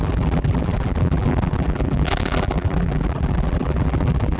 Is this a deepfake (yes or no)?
yes